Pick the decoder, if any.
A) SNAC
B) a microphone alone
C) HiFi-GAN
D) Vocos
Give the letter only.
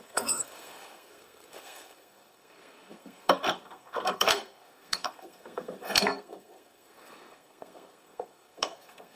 A